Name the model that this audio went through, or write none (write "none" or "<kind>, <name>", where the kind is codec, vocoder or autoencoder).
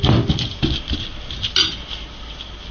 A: none